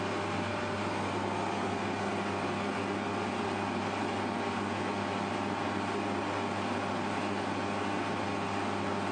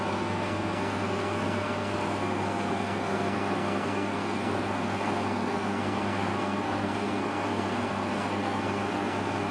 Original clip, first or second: first